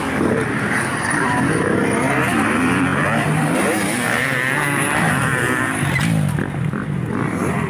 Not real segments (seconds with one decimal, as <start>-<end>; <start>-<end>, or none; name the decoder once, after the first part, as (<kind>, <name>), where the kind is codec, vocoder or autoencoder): none